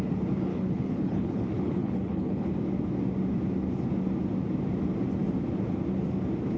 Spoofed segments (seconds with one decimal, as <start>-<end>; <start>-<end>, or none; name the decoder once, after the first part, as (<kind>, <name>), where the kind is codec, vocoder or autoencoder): 0.5-2.5 (codec, HILCodec)